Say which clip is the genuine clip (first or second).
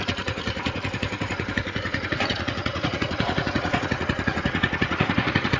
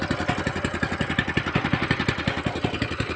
second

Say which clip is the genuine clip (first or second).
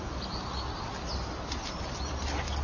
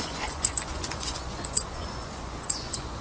first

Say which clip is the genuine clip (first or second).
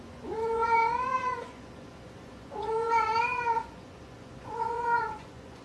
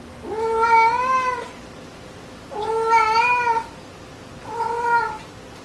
second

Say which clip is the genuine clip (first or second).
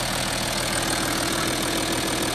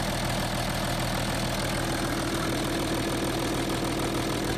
second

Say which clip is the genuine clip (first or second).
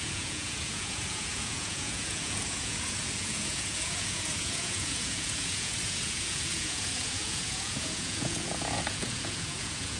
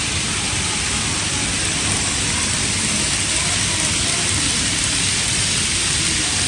second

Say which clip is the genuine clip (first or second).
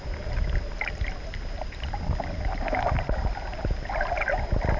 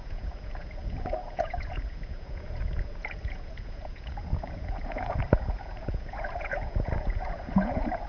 first